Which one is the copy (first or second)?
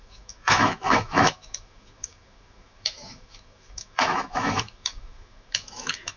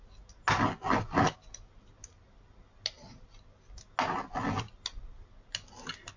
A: first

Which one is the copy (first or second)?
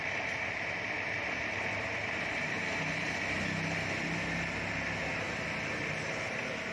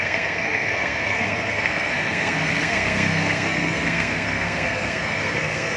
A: second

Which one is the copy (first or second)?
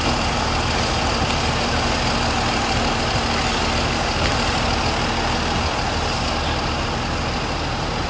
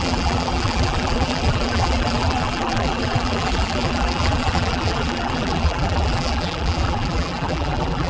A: second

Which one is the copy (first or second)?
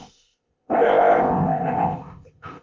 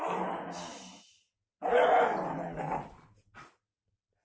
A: first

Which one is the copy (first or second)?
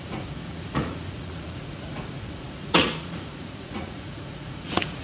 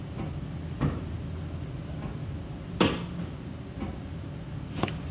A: first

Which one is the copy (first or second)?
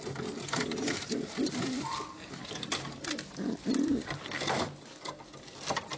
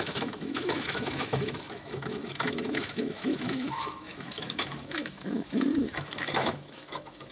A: second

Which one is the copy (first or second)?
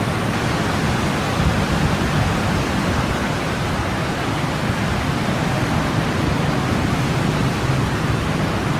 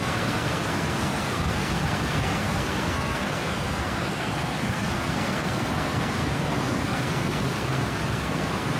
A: second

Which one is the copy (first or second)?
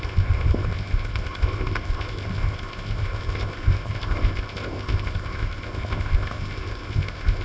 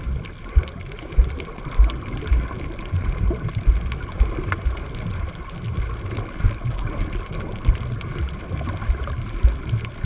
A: first